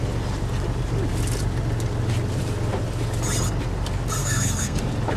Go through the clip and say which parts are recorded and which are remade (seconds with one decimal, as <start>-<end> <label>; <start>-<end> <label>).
0.0-4.2 recorded; 4.2-4.8 remade; 4.8-5.2 recorded